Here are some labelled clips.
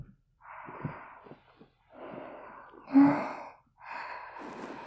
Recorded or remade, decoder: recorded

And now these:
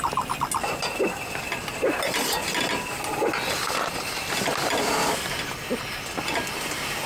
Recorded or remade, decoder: recorded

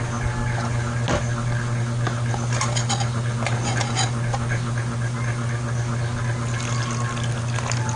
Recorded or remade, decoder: recorded